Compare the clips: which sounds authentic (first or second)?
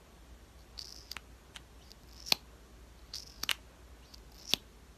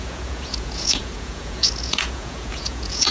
first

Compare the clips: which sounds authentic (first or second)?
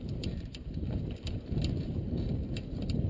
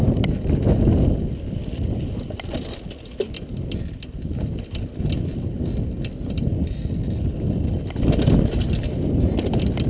second